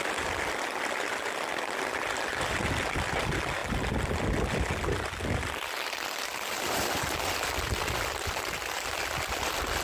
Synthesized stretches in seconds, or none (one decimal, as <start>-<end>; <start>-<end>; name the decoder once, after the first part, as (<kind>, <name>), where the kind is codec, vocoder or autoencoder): none